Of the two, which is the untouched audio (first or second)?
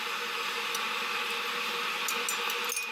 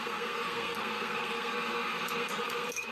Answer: first